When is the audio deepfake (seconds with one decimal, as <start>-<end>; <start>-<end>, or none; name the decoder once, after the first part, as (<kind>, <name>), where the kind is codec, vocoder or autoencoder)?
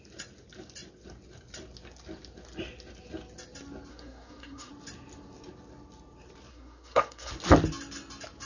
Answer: 3.9-4.7 (codec, SNAC); 6.5-7.3